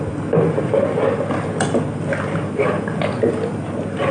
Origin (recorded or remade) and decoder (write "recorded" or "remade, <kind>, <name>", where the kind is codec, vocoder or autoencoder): recorded